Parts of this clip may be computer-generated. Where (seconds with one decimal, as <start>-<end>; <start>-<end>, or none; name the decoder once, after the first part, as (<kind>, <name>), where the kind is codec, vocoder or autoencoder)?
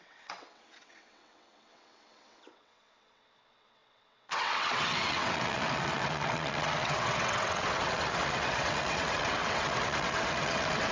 0.0-10.9 (vocoder, WaveNeXt)